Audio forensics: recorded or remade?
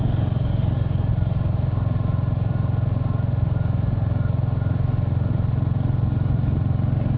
recorded